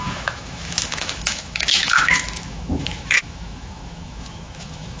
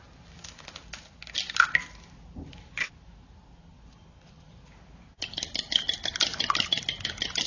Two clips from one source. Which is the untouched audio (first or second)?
second